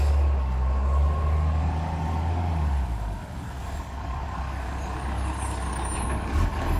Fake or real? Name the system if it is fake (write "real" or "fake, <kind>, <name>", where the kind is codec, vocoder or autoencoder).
fake, codec, DAC